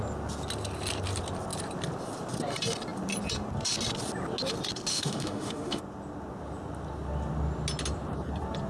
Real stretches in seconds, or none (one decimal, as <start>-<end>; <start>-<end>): 0.0-4.9; 5.8-8.7